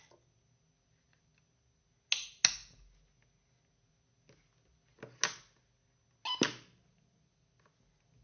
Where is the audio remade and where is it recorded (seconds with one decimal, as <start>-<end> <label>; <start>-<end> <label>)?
0.0-8.2 recorded